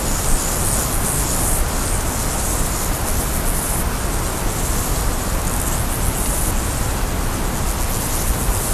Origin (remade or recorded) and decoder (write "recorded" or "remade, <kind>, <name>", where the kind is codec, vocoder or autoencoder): recorded